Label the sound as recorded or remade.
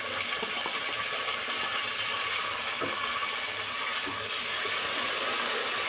recorded